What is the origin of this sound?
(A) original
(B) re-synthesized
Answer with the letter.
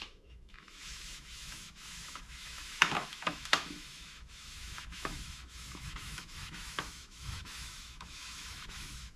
B